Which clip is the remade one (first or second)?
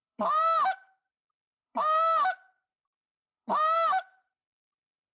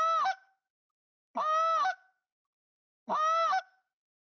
first